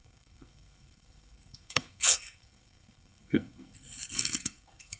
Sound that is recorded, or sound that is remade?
remade